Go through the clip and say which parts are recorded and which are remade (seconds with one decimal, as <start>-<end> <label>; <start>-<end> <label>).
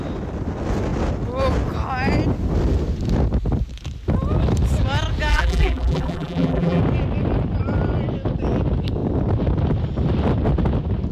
0.0-5.3 recorded; 5.3-6.8 remade; 6.8-11.1 recorded